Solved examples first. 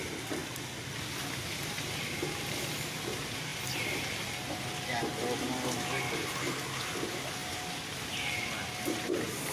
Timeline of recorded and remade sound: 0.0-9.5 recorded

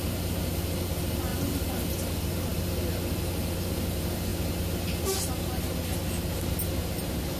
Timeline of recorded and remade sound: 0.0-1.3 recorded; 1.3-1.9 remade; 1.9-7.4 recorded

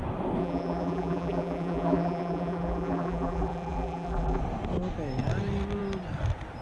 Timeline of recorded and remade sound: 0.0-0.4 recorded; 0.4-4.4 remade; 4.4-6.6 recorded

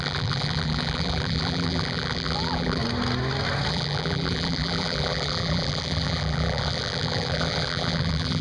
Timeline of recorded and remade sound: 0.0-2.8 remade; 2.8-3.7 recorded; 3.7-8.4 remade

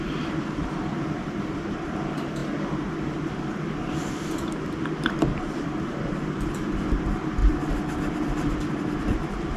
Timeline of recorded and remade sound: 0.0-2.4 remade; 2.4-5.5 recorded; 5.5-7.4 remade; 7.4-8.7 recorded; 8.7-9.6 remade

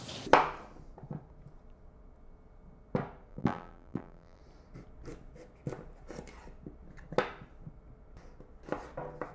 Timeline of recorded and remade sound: 0.0-3.3 recorded; 3.3-4.4 remade; 4.4-9.3 recorded

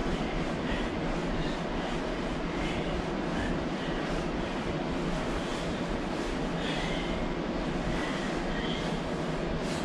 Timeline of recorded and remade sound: 0.0-0.5 remade; 0.5-9.8 recorded

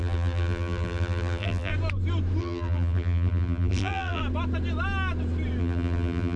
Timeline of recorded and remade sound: 0.0-1.7 remade; 1.7-2.4 recorded; 2.4-4.2 remade; 4.2-5.6 recorded; 5.6-6.4 remade